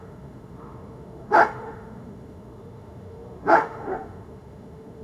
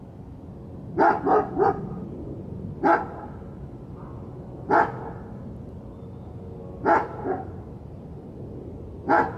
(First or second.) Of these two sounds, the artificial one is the first